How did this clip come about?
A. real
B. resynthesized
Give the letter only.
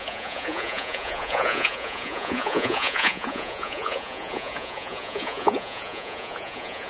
B